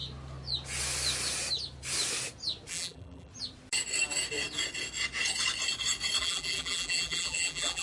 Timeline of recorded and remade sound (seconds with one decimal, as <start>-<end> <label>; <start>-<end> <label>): 0.0-2.7 recorded; 2.7-3.3 remade; 3.3-6.2 recorded; 6.2-7.8 remade

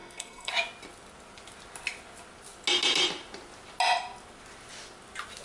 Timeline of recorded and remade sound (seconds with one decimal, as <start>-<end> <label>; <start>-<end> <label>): 0.0-0.5 remade; 0.5-5.4 recorded

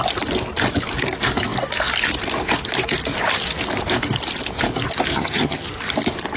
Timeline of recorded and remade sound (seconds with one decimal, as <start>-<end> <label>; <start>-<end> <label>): 0.0-5.1 recorded; 5.1-5.7 remade; 5.7-6.4 recorded

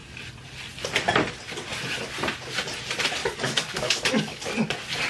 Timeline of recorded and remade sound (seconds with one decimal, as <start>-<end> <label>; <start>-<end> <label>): 0.0-3.2 recorded; 3.2-4.4 remade; 4.4-5.1 recorded